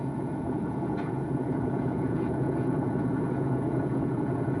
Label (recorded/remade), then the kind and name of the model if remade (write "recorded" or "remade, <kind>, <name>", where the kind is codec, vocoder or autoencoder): remade, vocoder, Vocos